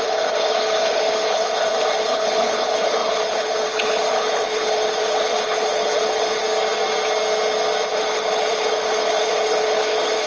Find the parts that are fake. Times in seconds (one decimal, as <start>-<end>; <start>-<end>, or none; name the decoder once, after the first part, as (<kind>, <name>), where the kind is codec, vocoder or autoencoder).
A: 0.0-6.4 (codec, HILCodec); 7.9-10.3